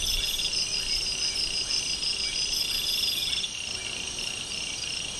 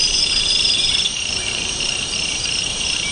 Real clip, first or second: first